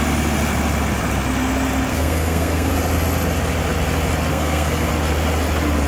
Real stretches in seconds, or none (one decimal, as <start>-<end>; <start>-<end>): 0.0-1.9; 2.7-4.3; 4.9-5.9